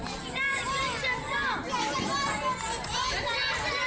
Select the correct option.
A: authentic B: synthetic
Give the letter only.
A